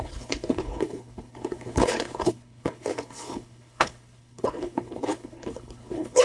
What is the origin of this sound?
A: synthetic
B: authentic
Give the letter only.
A